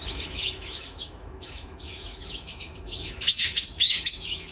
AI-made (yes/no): yes